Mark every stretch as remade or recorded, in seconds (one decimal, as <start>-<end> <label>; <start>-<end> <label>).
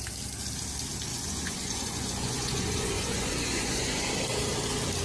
0.0-1.1 recorded; 1.1-4.1 remade; 4.1-5.0 recorded